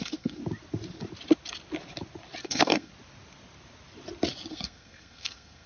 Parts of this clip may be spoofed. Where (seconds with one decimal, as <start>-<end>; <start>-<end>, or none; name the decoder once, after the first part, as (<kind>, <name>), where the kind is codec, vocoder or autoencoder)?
0.0-0.4 (codec, SNAC); 2.4-2.9; 4.5-5.7